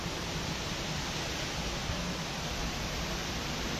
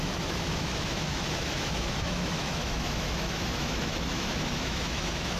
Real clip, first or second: first